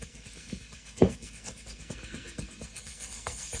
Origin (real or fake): fake